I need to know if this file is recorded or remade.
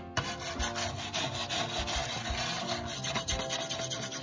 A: recorded